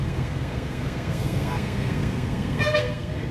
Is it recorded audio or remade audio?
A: remade